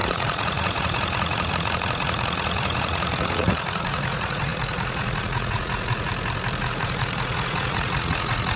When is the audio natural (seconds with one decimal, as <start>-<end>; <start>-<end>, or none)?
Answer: 6.1-6.6